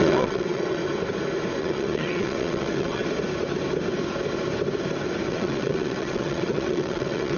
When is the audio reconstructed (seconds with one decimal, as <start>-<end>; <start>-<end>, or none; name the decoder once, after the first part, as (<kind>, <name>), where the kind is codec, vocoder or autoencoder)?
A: 0.0-0.8 (vocoder, WaveNeXt); 1.6-3.0; 5.3-7.4